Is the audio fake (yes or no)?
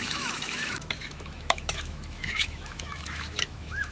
yes